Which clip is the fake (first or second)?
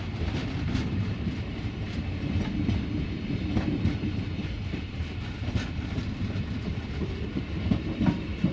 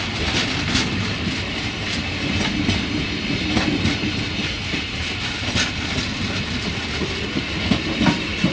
first